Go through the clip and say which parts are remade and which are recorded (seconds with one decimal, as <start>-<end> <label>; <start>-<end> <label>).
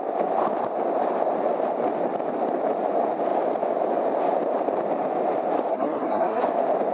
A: 0.0-5.7 recorded; 5.7-6.4 remade; 6.4-6.9 recorded